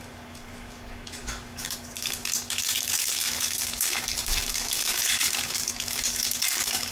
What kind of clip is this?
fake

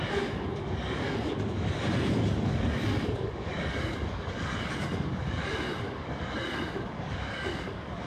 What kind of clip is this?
fake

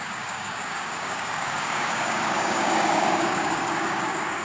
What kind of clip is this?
fake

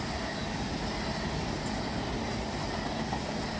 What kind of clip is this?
real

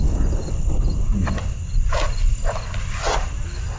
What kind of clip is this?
real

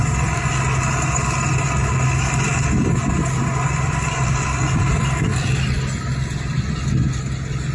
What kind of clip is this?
real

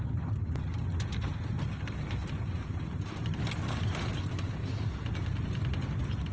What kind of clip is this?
real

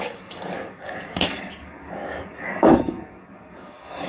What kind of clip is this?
fake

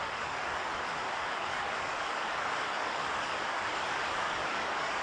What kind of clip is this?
fake